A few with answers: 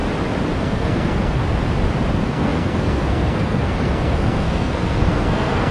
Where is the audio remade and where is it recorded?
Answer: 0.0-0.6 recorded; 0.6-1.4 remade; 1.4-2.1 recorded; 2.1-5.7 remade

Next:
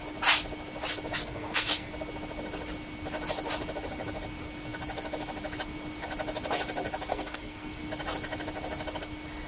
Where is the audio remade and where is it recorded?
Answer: 0.0-1.2 recorded; 1.2-1.9 remade; 1.9-7.1 recorded; 7.1-7.8 remade; 7.8-9.5 recorded

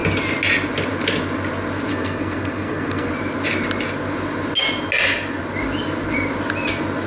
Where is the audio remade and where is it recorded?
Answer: 0.0-1.9 recorded; 1.9-3.1 remade; 3.1-7.1 recorded

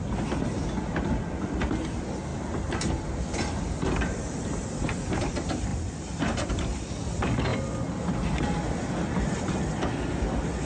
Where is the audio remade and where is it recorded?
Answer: 0.0-10.7 recorded